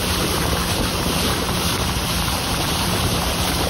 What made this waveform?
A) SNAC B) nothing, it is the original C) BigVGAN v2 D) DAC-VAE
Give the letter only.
C